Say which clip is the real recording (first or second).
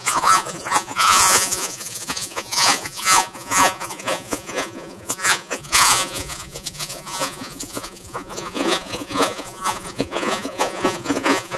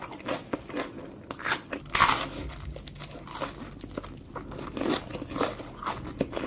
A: second